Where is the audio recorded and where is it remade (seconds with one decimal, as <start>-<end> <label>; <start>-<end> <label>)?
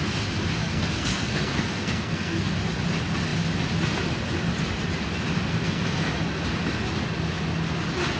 0.0-0.6 recorded; 0.6-2.5 remade; 2.5-5.5 recorded; 5.5-6.1 remade; 6.1-8.2 recorded